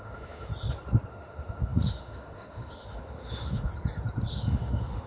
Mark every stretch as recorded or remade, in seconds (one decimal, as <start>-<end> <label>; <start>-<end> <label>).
0.0-0.5 remade; 0.5-1.1 recorded; 1.1-3.7 remade; 3.7-4.3 recorded; 4.3-5.1 remade